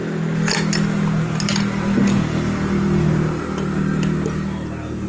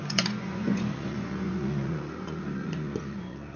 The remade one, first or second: second